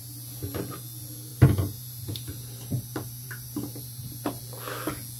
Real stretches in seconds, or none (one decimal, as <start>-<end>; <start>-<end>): 0.0-1.3; 4.4-5.2